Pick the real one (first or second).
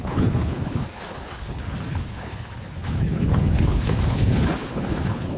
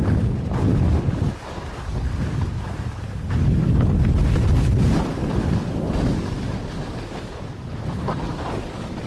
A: second